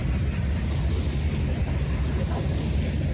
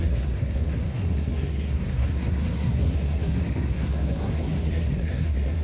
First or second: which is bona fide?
first